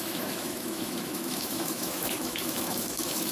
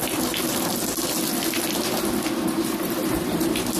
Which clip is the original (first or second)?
second